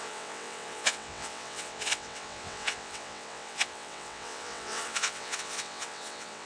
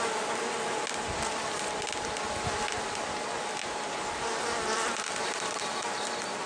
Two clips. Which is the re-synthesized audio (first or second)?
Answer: first